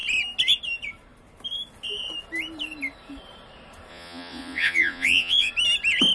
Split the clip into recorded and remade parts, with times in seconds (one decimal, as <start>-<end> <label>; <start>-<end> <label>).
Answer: 0.0-3.9 recorded; 3.9-5.5 remade; 5.5-6.1 recorded